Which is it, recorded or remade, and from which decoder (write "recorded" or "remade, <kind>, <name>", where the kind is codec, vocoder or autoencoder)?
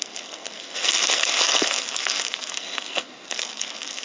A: remade, codec, SNAC